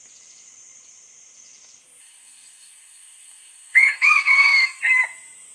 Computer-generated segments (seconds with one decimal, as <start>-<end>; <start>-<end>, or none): 2.0-4.8